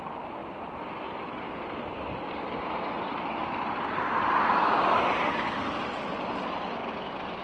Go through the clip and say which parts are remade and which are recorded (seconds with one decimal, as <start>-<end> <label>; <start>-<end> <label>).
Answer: 0.0-0.4 recorded; 0.4-4.8 remade; 4.8-7.4 recorded